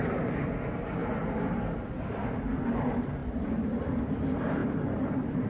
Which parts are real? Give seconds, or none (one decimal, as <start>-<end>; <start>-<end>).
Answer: 1.0-2.2